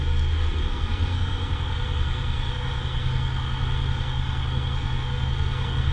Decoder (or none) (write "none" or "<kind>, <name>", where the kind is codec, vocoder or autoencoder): codec, SNAC